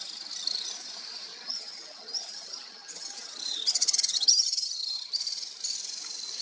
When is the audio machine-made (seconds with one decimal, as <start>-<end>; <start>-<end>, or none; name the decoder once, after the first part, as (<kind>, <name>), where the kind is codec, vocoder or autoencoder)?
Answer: 1.3-5.1 (vocoder, HiFi-GAN)